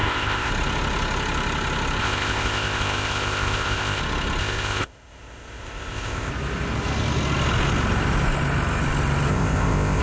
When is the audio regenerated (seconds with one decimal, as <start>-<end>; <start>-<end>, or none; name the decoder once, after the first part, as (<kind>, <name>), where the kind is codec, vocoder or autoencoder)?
0.0-0.5 (codec, ZipCodec); 2.0-4.0; 4.4-6.3; 9.3-10.0